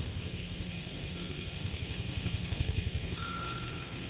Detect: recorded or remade remade